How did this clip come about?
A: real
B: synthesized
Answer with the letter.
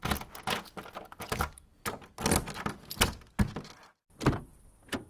A